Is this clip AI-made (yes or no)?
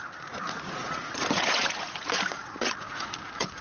yes